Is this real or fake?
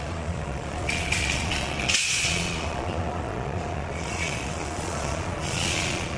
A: fake